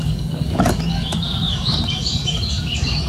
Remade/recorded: remade